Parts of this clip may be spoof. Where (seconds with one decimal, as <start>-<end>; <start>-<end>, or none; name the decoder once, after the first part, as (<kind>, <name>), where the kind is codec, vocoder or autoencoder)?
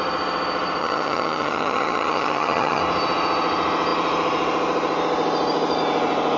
0.8-2.8 (vocoder, HiFi-GAN)